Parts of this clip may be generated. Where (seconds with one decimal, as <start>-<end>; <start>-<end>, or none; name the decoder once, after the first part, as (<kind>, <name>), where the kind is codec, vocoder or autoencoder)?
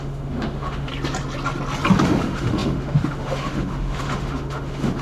0.0-0.9 (autoencoder, DAC-VAE); 2.0-5.0